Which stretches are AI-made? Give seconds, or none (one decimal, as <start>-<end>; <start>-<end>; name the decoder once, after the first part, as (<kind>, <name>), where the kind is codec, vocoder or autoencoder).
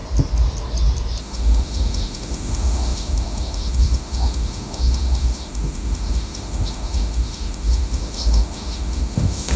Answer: 1.2-9.6 (autoencoder, DAC-VAE)